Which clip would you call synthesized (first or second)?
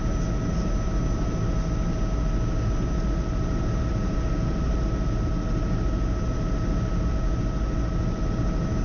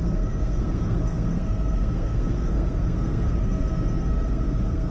second